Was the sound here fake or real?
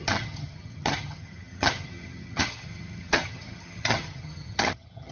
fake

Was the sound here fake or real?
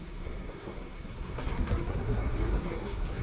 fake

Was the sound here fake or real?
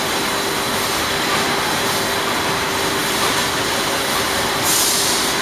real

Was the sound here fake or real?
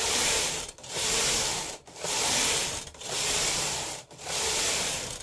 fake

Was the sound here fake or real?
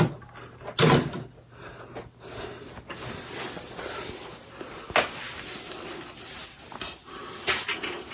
real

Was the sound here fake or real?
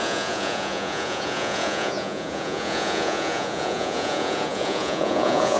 fake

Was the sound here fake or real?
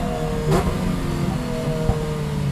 real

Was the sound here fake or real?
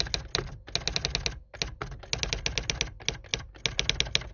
real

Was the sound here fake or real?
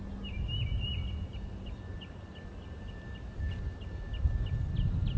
real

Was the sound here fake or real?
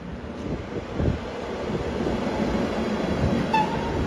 real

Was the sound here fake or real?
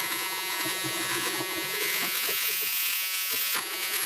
fake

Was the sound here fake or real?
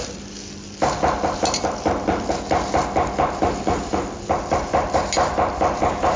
real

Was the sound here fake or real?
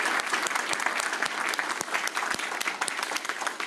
real